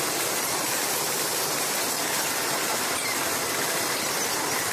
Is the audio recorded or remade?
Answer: recorded